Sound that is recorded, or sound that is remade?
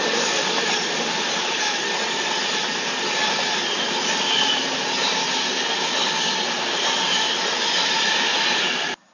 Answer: recorded